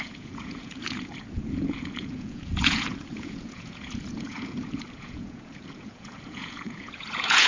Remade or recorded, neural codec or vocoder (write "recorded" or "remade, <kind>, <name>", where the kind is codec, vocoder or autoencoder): remade, vocoder, Vocos